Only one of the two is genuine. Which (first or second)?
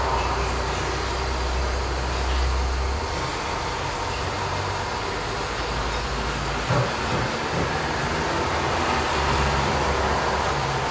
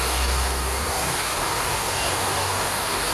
first